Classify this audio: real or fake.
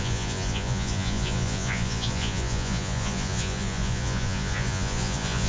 fake